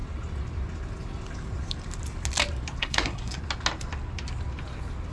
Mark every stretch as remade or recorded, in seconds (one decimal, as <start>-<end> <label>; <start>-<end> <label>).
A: 0.0-2.8 recorded; 2.8-3.4 remade; 3.4-5.1 recorded